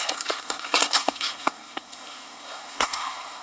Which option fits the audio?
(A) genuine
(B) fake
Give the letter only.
B